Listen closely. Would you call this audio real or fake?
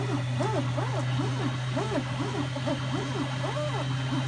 real